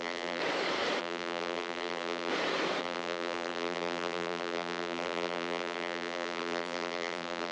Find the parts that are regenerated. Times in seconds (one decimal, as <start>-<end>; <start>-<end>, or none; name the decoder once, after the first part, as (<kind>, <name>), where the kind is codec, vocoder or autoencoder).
0.0-0.4 (vocoder, BigVGAN v2); 1.0-2.3; 2.8-7.5